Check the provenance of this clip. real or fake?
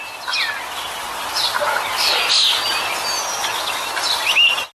real